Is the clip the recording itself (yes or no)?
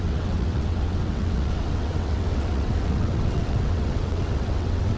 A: no